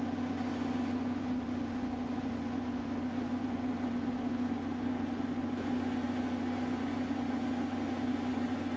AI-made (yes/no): yes